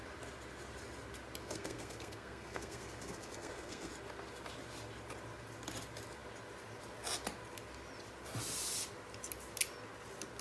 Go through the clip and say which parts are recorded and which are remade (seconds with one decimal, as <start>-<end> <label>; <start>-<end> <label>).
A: 0.0-1.4 recorded; 1.4-3.9 remade; 3.9-10.4 recorded